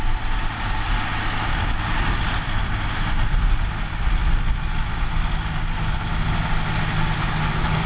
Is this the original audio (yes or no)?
yes